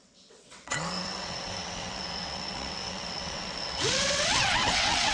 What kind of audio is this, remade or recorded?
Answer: remade